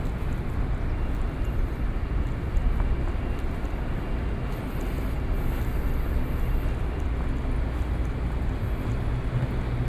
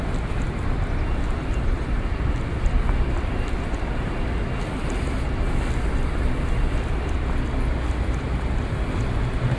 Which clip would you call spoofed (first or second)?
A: second